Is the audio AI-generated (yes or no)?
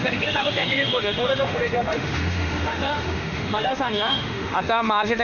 yes